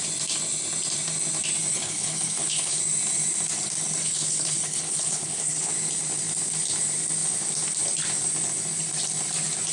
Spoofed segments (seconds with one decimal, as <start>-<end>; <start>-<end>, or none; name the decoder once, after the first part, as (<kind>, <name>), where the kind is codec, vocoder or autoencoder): 1.7-2.8 (codec, HILCodec); 4.0-5.7